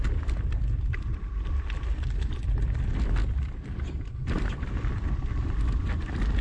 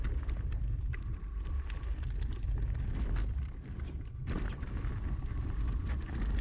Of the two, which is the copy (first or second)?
first